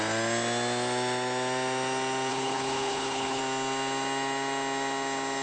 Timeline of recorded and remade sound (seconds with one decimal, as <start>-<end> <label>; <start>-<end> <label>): 0.0-2.3 recorded; 2.3-3.4 remade; 3.4-5.4 recorded